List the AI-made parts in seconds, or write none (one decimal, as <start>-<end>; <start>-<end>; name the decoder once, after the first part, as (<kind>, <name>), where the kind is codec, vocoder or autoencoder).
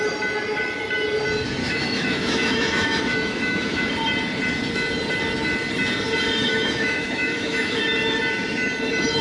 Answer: 1.6-3.9 (autoencoder, DAC-VAE); 6.4-7.8